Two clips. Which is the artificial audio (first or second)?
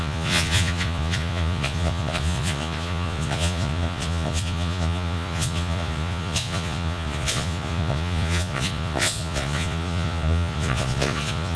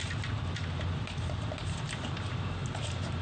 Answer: first